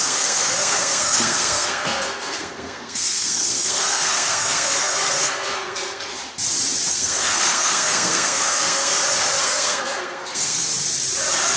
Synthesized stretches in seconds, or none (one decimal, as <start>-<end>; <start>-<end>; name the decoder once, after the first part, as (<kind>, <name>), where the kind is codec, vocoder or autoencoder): 0.0-6.1 (codec, SNAC); 6.9-8.9; 9.4-10.7

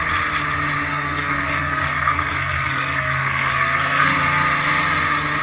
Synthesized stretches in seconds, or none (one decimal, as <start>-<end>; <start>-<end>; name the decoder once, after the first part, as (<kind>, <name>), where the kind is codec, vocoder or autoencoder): 0.9-4.1 (codec, SNAC)

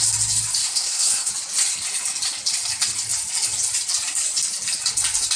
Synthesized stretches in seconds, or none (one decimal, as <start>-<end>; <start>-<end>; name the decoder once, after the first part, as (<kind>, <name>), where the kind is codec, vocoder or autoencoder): 0.6-1.3 (codec, SNAC)